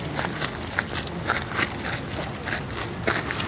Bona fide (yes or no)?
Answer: yes